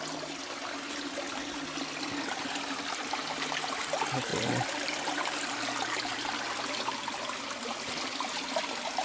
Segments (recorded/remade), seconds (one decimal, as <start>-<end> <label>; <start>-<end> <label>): 0.0-9.0 recorded